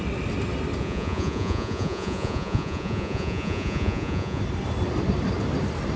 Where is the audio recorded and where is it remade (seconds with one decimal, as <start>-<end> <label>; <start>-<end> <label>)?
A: 0.0-0.8 recorded; 0.8-4.4 remade; 4.4-6.0 recorded